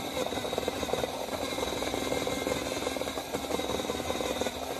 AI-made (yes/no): no